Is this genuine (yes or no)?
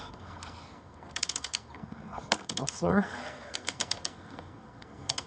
no